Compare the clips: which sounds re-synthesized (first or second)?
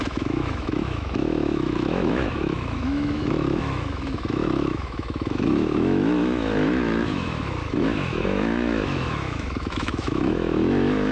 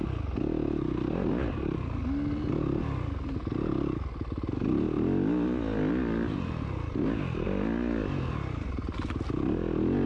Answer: first